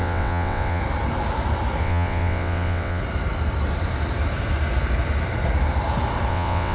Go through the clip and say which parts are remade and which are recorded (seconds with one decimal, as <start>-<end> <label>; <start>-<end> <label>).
0.0-0.8 remade; 0.8-1.8 recorded; 1.8-3.0 remade; 3.0-6.3 recorded; 6.3-6.7 remade